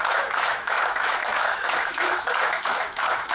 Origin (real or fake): fake